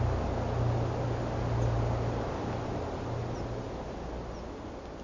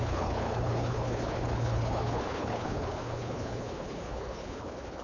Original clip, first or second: first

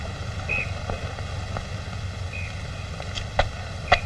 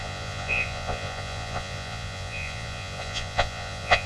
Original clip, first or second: first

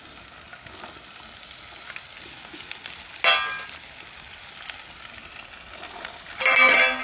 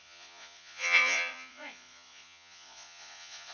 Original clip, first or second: first